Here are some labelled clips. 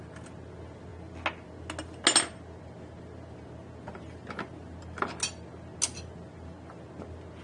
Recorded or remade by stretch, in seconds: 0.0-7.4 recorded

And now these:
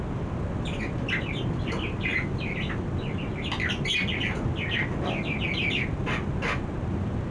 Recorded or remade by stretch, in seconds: 0.0-7.3 recorded

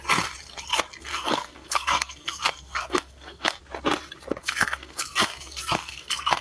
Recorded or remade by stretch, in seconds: 0.0-1.1 recorded; 1.1-3.6 remade; 3.6-4.4 recorded; 4.4-6.4 remade

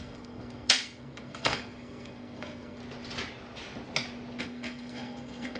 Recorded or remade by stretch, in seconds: 0.0-2.8 remade; 2.8-4.4 recorded; 4.4-5.6 remade

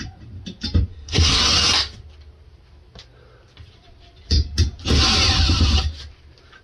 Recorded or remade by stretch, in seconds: 0.0-0.9 recorded; 0.9-1.4 remade; 1.4-6.6 recorded

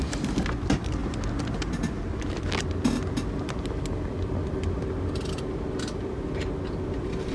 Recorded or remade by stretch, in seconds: 0.0-7.3 recorded

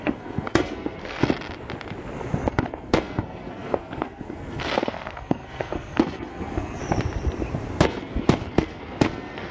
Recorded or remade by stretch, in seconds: 0.0-1.2 remade; 1.2-2.5 recorded; 2.5-6.8 remade; 6.8-7.8 recorded; 7.8-9.5 remade